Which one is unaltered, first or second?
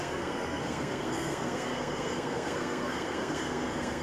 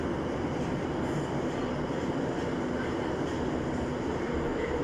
second